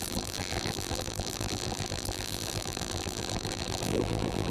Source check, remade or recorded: remade